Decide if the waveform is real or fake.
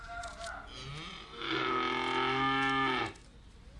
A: real